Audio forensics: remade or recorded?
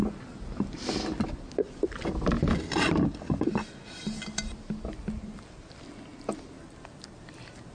recorded